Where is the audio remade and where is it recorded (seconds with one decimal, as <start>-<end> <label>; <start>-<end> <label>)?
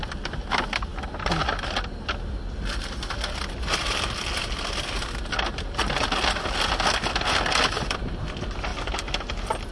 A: 0.0-9.7 recorded